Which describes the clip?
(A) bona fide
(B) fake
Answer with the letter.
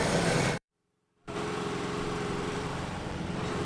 B